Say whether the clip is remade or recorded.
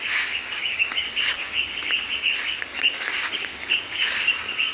remade